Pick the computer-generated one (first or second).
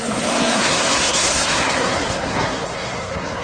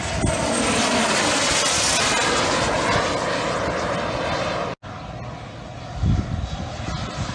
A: first